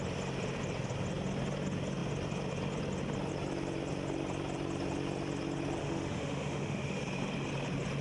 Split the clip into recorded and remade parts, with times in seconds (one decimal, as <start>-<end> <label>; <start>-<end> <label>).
0.0-5.8 recorded; 5.8-7.0 remade; 7.0-8.0 recorded